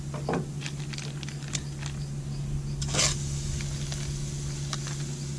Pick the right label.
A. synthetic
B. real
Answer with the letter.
B